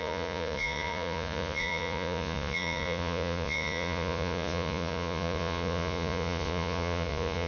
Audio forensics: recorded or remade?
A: remade